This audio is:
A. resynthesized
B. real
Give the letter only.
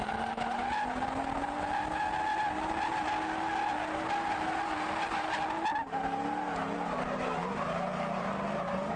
B